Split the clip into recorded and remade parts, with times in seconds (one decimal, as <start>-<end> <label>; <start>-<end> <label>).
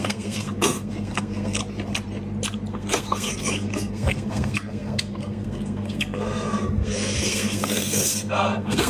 0.0-1.6 remade; 1.6-2.7 recorded; 2.7-8.9 remade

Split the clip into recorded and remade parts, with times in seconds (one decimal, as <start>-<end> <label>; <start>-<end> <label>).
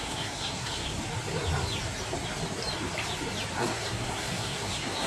0.0-0.9 remade; 0.9-3.6 recorded; 3.6-5.1 remade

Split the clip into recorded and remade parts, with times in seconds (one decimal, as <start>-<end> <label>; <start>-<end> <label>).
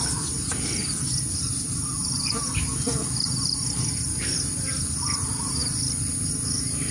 0.0-6.9 recorded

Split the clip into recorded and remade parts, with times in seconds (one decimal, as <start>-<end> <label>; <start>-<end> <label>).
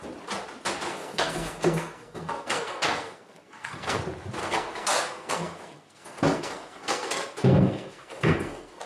0.0-0.9 recorded; 0.9-4.0 remade; 4.0-4.4 recorded; 4.4-8.9 remade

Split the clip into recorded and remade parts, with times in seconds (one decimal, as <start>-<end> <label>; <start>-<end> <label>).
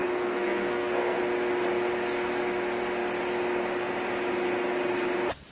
0.0-1.2 remade; 1.2-5.5 recorded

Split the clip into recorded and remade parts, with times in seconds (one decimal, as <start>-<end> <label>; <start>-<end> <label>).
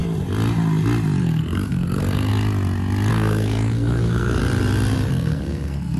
0.0-1.2 recorded; 1.2-2.3 remade; 2.3-3.1 recorded; 3.1-4.4 remade; 4.4-5.1 recorded; 5.1-6.0 remade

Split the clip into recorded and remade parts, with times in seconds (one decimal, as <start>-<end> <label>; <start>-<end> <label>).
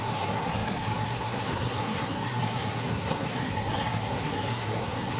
0.0-5.2 remade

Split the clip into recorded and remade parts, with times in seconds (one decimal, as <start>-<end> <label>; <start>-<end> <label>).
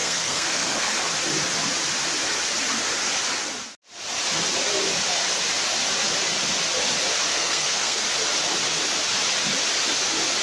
0.0-1.0 remade; 1.0-7.3 recorded; 7.3-8.0 remade; 8.0-10.4 recorded